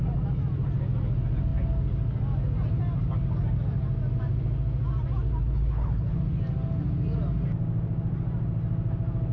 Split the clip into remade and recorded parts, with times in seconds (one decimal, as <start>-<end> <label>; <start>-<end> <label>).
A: 0.0-5.4 recorded; 5.4-6.2 remade; 6.2-9.3 recorded